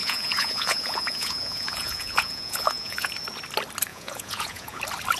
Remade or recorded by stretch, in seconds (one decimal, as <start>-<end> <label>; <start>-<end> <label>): 0.0-3.1 remade; 3.1-3.9 recorded; 3.9-4.8 remade; 4.8-5.2 recorded